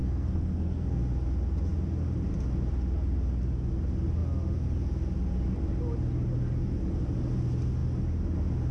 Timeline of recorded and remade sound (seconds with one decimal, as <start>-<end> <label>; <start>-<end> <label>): 0.0-1.0 remade; 1.0-8.7 recorded